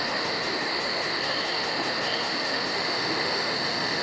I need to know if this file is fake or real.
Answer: fake